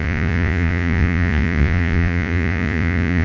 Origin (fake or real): fake